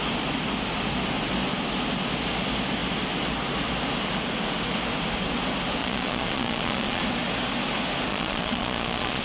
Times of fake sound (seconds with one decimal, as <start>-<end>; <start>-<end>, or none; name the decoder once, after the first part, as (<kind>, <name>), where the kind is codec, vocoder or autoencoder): 5.8-7.0 (vocoder, Vocos); 8.1-9.2

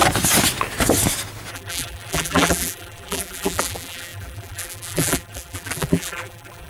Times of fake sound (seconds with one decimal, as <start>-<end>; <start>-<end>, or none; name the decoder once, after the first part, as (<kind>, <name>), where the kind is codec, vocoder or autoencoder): 1.5-6.7 (vocoder, BigVGAN v2)